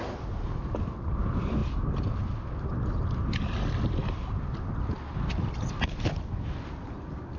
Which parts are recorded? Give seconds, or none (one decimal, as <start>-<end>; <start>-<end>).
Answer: 0.0-7.4